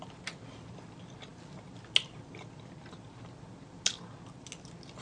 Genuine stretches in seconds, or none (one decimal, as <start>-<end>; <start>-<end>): 0.0-5.0